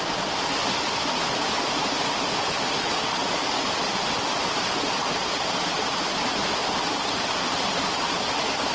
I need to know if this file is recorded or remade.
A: recorded